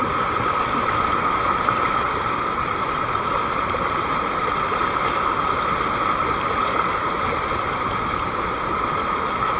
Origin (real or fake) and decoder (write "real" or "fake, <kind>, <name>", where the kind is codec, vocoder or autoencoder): real